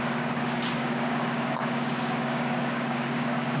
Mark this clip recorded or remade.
remade